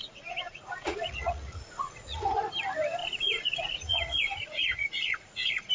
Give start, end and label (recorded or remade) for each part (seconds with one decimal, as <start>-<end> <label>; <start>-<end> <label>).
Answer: 0.0-2.4 remade; 2.4-3.0 recorded; 3.0-5.7 remade

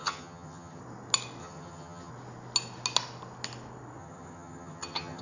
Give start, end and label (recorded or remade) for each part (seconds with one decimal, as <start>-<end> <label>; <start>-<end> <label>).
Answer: 0.0-0.8 remade; 0.8-1.4 recorded; 1.4-2.1 remade; 2.1-4.0 recorded; 4.0-5.2 remade

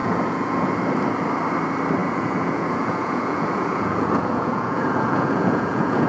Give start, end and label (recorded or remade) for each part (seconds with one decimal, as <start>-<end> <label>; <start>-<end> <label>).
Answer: 0.0-0.7 remade; 0.7-2.0 recorded; 2.0-6.1 remade